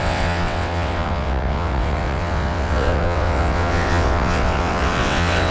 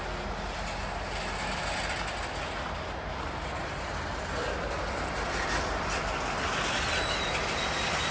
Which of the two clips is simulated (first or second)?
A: first